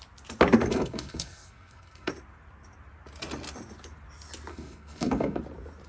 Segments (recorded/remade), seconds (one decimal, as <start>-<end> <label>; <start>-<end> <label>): 0.0-0.7 recorded; 0.7-2.1 remade; 2.1-4.5 recorded; 4.5-5.4 remade; 5.4-5.9 recorded